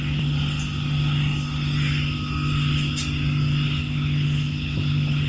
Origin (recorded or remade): recorded